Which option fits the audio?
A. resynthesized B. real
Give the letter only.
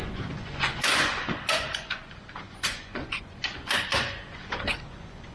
A